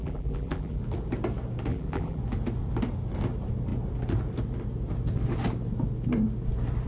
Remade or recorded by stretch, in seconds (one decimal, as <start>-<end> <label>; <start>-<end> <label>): 0.0-0.8 remade; 0.8-1.7 recorded; 1.7-2.2 remade; 2.2-6.9 recorded